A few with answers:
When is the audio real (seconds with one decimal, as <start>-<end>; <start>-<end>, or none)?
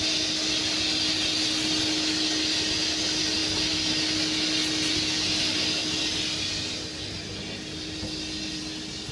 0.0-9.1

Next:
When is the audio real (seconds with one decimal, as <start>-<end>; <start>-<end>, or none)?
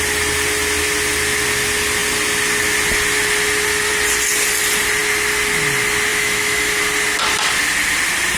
0.0-6.1; 6.8-8.4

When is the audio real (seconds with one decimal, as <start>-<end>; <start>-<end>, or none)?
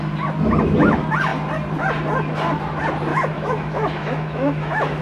0.0-3.1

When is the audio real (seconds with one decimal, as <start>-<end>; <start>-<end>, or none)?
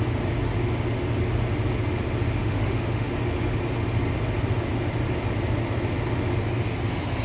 0.0-2.4; 3.1-7.2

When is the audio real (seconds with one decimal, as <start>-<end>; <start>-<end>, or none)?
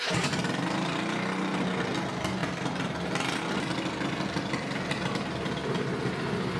0.0-6.6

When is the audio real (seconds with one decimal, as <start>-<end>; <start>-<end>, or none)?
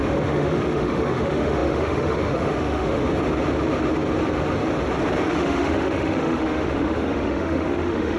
3.0-5.3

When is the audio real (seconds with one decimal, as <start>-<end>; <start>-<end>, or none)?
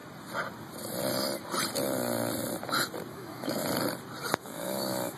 0.0-3.1; 3.6-4.4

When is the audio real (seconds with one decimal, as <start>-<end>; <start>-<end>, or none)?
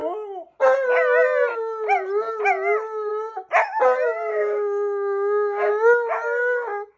0.0-4.3; 5.7-7.0